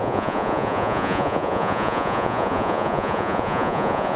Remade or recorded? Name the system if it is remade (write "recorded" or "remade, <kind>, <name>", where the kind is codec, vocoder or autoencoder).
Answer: remade, vocoder, Vocos